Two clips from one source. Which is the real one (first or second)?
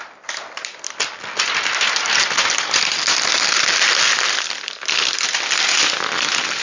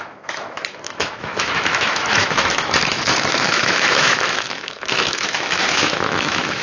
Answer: first